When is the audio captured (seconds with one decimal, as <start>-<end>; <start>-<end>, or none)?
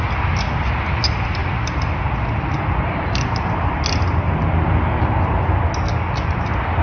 0.0-6.8